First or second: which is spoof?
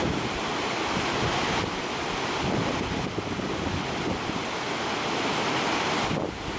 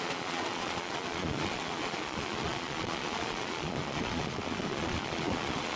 second